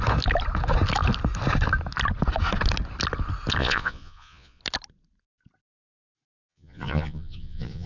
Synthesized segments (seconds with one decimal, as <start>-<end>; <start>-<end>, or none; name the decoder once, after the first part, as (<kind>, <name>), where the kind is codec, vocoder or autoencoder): 3.6-4.6 (vocoder, Vocos); 6.5-7.9